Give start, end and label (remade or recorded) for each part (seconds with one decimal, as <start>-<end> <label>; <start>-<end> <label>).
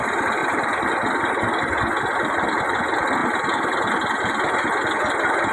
0.0-5.5 recorded